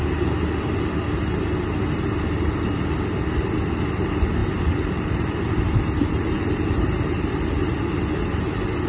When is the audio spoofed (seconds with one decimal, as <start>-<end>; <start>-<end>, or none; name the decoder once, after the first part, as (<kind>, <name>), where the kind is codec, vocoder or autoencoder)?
4.4-7.4 (vocoder, BigVGAN v2)